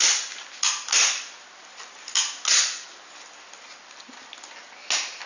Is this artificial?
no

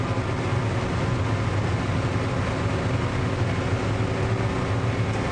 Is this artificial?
no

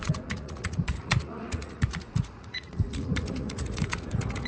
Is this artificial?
yes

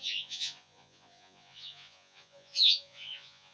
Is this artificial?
yes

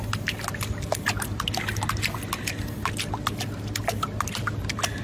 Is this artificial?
no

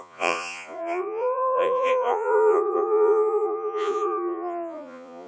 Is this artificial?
yes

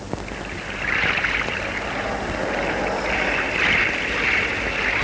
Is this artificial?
no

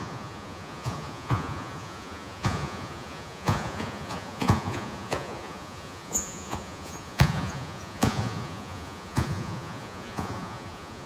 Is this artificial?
yes